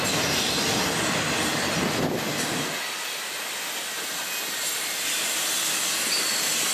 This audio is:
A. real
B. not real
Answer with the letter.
A